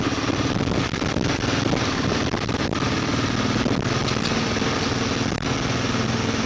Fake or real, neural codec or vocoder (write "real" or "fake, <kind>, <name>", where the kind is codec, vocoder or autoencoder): real